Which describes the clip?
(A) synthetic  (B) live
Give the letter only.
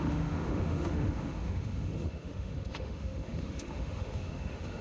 A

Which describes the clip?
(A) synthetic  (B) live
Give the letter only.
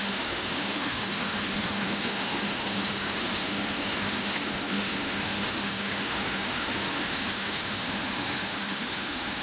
A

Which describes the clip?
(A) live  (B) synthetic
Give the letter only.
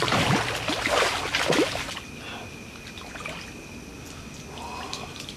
A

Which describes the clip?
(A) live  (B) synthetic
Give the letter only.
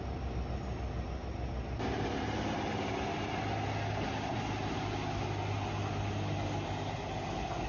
A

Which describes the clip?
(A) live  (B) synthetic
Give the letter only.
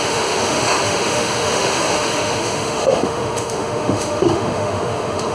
B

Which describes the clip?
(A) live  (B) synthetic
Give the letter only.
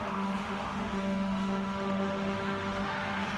B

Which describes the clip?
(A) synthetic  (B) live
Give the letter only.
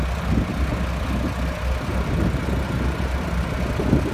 B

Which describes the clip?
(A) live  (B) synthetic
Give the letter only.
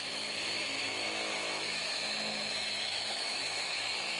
B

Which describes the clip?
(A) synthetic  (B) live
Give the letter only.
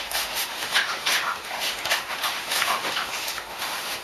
A